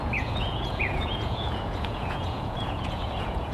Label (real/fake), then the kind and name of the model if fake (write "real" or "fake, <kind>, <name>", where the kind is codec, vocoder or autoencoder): fake, vocoder, Vocos